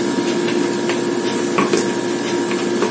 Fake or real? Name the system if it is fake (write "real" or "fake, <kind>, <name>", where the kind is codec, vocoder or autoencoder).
real